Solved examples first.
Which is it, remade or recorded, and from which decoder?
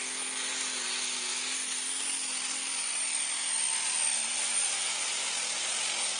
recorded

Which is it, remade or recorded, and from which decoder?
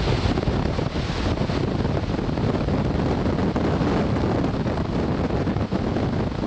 recorded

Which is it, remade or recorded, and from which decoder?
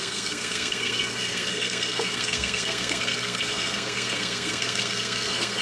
remade, codec, SNAC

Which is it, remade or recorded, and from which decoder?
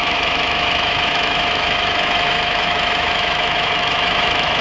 remade, autoencoder, DAC-VAE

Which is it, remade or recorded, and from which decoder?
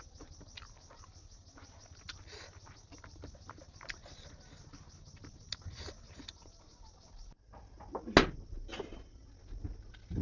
recorded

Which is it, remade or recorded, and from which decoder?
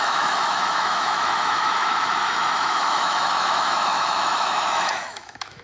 remade, autoencoder, DAC-VAE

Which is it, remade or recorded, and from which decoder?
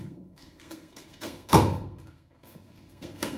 remade, codec, SNAC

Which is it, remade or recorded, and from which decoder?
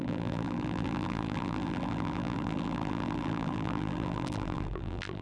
remade, vocoder, BigVGAN v2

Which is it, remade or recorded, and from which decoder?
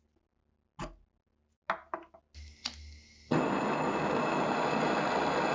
recorded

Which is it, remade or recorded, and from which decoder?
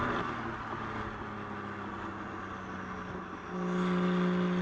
recorded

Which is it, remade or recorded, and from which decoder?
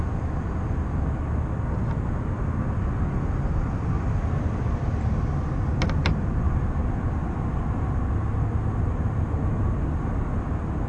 recorded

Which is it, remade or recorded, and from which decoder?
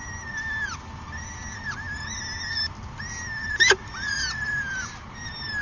recorded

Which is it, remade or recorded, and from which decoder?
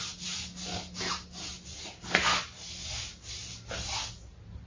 recorded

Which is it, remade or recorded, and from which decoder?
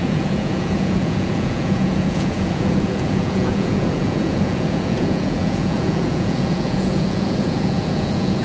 remade, vocoder, Vocos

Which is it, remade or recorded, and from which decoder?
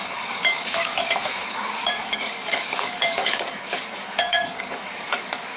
remade, codec, DAC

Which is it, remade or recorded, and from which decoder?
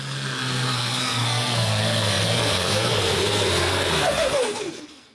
remade, codec, SNAC